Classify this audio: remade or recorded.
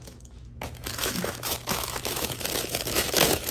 remade